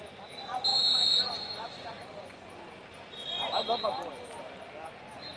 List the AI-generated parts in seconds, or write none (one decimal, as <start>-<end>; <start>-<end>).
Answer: 0.7-2.6